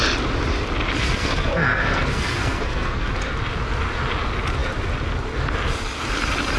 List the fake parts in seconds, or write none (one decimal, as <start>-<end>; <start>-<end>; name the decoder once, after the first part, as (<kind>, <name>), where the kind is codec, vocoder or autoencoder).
1.0-3.1 (codec, SNAC)